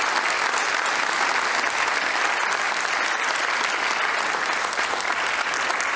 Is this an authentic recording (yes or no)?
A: yes